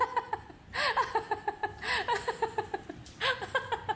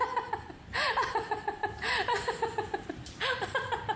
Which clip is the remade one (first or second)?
second